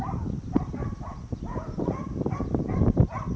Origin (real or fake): real